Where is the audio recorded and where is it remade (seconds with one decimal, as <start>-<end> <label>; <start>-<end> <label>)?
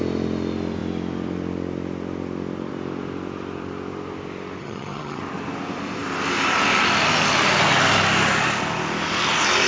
0.0-4.6 recorded; 4.6-5.2 remade; 5.2-9.7 recorded